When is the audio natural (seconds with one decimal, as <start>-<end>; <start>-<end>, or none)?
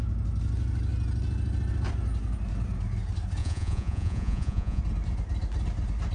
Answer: 0.0-3.4; 4.8-6.1